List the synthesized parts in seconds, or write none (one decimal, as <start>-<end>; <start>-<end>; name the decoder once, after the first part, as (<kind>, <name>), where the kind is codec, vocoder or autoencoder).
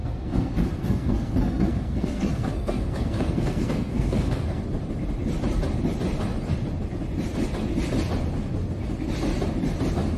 0.0-4.6 (codec, SNAC)